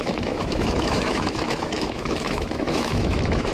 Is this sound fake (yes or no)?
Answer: yes